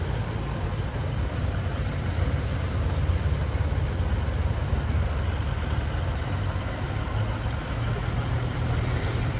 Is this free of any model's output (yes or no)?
yes